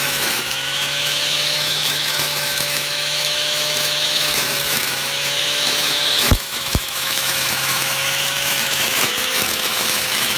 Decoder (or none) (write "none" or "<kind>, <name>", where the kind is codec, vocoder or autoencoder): autoencoder, DAC-VAE